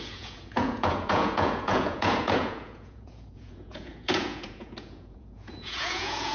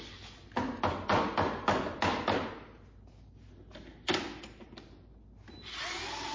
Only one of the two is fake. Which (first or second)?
first